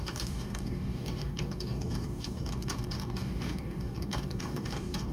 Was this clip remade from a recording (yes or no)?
yes